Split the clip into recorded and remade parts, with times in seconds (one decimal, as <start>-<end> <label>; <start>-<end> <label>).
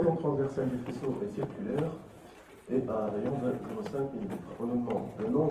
0.0-5.5 recorded